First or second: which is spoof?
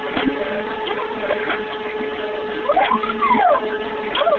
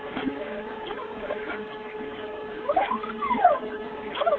second